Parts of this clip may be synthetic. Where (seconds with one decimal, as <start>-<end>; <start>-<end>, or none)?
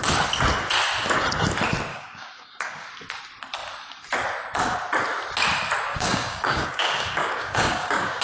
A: 1.9-2.9; 5.9-8.2